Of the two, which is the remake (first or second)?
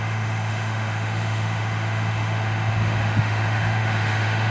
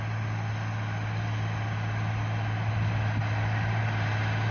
first